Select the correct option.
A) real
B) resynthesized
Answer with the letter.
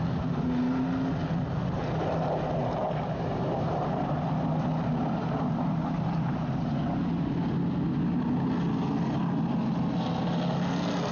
A